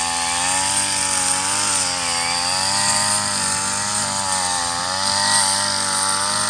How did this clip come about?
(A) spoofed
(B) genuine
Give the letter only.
B